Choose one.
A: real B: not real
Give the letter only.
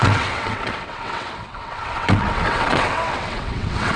B